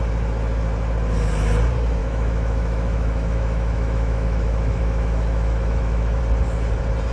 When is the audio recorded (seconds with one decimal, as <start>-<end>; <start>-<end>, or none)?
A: 0.0-2.0; 6.2-7.1